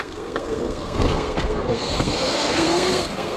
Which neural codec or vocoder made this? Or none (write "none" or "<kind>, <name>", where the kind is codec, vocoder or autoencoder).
codec, SNAC